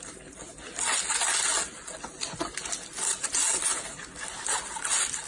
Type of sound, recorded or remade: recorded